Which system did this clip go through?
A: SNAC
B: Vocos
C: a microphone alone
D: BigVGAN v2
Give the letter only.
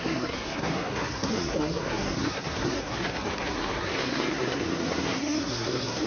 A